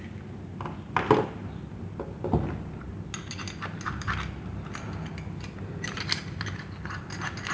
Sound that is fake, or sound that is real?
real